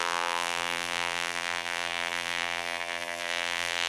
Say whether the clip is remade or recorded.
remade